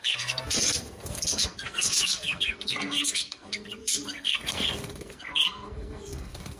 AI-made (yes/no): yes